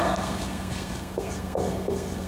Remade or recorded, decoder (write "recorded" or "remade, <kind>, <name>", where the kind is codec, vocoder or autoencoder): remade, codec, SNAC